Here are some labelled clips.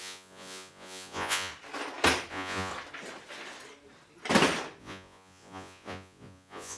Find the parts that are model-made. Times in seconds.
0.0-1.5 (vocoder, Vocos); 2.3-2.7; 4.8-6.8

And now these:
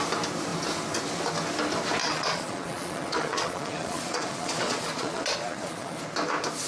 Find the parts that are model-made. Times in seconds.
2.0-6.0 (vocoder, Vocos)

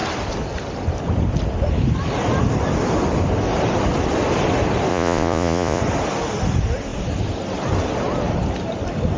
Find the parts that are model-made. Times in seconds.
4.9-5.8 (vocoder, Vocos)

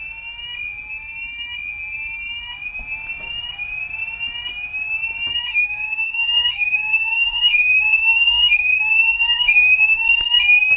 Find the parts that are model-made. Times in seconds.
5.5-10.0 (autoencoder, DAC-VAE)

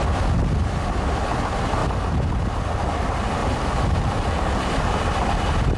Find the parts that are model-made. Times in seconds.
1.8-2.4 (vocoder, BigVGAN v2); 3.4-5.8

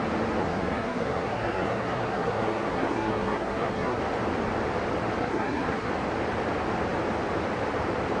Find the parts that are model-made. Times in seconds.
0.4-4.0 (codec, SNAC); 5.2-5.9

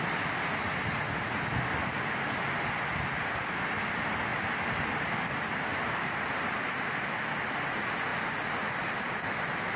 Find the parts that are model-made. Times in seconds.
4.3-5.1 (vocoder, BigVGAN v2); 5.7-7.0

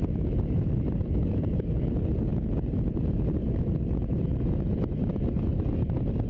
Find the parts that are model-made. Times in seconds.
none